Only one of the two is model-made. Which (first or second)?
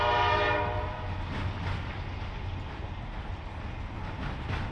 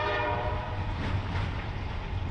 second